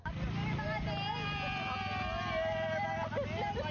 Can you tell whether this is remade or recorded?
recorded